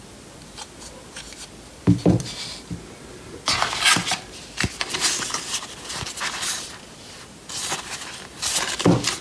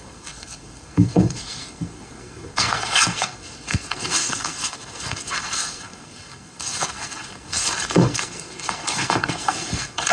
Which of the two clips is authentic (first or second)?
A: first